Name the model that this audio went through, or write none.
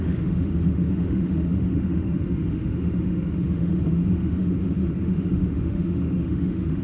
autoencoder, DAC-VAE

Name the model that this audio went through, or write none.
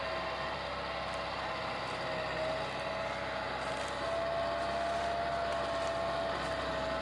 none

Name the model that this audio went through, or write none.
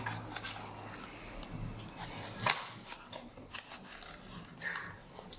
none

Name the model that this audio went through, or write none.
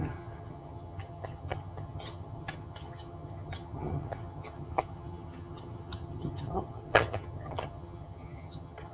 vocoder, HiFi-GAN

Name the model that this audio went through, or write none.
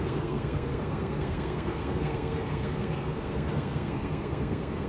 codec, SNAC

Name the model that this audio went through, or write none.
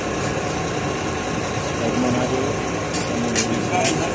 none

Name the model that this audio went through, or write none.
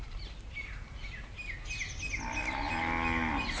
none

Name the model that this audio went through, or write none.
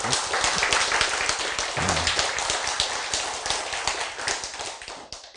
none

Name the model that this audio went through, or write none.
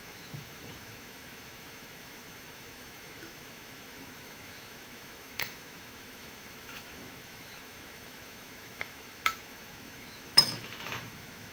autoencoder, DAC-VAE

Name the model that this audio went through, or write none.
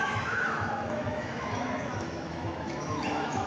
autoencoder, DAC-VAE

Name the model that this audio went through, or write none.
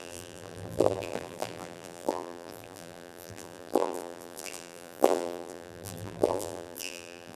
vocoder, BigVGAN v2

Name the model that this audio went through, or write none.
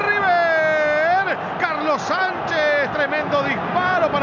none